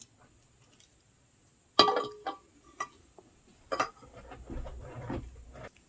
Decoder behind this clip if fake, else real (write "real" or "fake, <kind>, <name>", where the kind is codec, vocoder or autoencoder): real